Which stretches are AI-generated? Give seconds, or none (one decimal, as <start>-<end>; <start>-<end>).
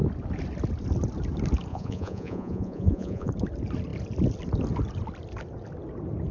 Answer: 1.7-3.3